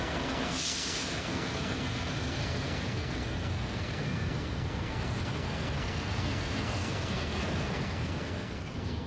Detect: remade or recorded remade